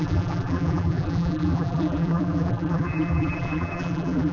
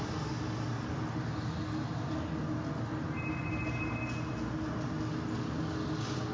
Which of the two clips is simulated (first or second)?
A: first